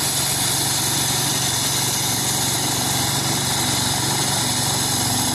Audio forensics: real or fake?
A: real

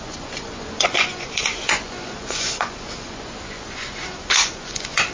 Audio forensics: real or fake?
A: fake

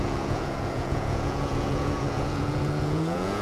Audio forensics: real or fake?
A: fake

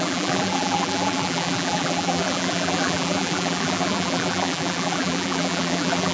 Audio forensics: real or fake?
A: fake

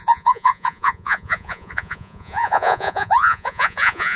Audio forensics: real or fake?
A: fake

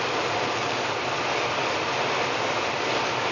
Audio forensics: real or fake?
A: real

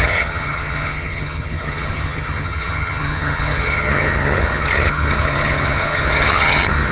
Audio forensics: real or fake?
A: fake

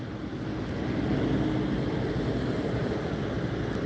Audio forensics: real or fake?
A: real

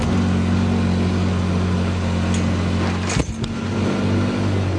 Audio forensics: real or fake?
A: real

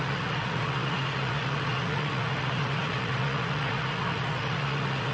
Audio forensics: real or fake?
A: fake